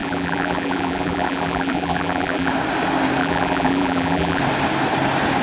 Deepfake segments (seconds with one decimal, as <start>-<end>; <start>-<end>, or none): 0.0-2.5; 3.2-4.4